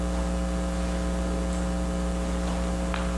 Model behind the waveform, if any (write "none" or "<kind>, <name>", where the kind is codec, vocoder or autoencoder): none